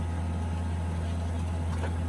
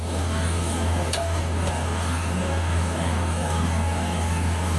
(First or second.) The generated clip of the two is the second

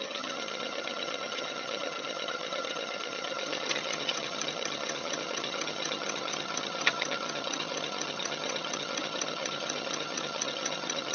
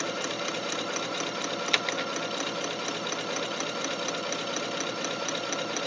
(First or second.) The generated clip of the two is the first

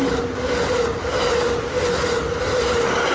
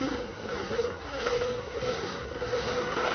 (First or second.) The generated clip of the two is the second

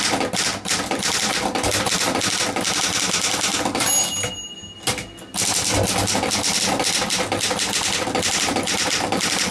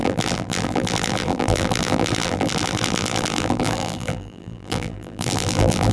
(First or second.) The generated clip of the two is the second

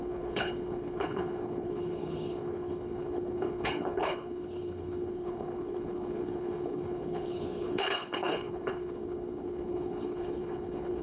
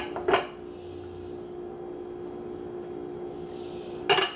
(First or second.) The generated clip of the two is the first